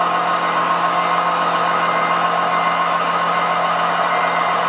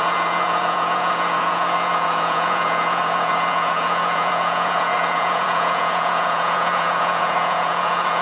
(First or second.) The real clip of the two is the first